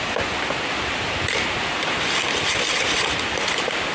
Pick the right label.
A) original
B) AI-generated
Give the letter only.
A